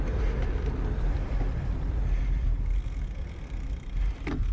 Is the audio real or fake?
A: fake